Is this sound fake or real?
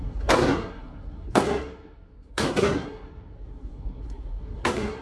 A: fake